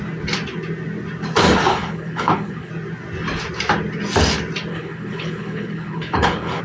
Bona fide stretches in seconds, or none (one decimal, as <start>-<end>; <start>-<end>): 0.0-1.7; 2.7-4.7